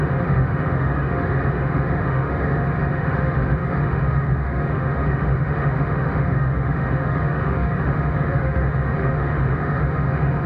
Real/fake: fake